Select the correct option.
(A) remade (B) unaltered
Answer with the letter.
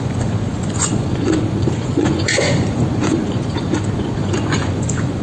A